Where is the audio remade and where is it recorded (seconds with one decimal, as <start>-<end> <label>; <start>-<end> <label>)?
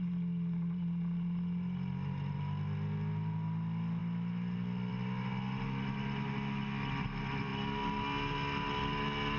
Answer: 0.0-9.4 recorded